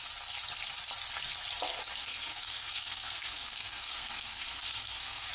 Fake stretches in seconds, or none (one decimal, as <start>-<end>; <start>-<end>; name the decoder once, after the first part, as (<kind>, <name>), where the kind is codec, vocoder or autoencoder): 2.0-5.3 (codec, SNAC)